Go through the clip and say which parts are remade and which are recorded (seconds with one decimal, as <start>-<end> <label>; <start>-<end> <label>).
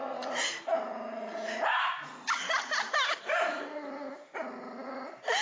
0.0-5.4 recorded